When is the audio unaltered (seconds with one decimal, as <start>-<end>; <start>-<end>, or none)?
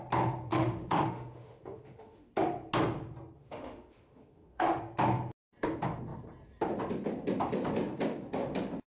0.0-0.5; 2.3-3.4; 4.8-8.9